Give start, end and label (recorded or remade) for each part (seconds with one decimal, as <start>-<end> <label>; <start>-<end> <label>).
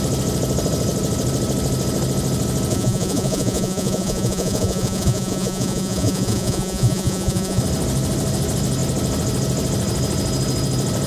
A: 0.0-2.7 recorded; 2.7-7.6 remade; 7.6-11.1 recorded